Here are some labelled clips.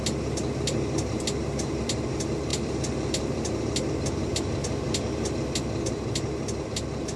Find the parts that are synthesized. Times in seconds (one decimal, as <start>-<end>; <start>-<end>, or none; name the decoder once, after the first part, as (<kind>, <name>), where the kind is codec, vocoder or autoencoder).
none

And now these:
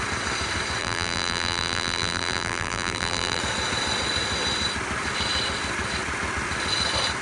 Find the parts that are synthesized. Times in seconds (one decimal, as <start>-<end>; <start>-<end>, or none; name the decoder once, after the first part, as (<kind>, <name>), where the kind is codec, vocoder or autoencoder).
0.8-3.4 (vocoder, BigVGAN v2)

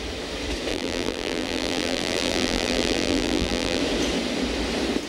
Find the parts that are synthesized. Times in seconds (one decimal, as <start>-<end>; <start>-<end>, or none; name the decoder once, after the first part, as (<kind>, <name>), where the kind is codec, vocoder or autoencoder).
0.7-3.8 (vocoder, BigVGAN v2)

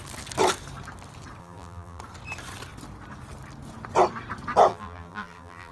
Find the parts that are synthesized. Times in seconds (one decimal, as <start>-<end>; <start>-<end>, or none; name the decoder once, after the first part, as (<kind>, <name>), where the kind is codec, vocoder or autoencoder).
1.4-2.0 (vocoder, BigVGAN v2); 4.7-5.7

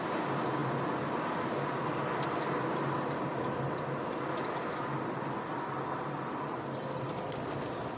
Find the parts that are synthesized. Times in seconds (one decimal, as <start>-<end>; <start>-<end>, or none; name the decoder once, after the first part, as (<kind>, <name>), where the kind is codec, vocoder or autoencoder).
none

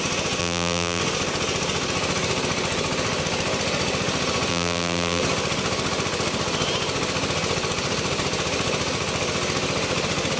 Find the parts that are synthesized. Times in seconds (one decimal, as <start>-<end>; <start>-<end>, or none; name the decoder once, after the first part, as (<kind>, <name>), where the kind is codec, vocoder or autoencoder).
0.4-1.0 (vocoder, BigVGAN v2); 4.5-5.2

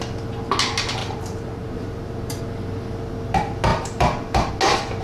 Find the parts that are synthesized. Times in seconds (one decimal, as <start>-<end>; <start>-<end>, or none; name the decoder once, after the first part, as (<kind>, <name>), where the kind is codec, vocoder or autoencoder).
1.0-2.4 (vocoder, BigVGAN v2); 3.7-4.5

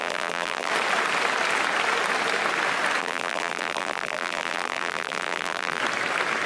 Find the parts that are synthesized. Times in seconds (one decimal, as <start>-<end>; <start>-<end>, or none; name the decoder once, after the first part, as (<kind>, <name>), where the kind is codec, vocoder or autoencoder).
0.0-0.7 (vocoder, BigVGAN v2); 3.0-5.8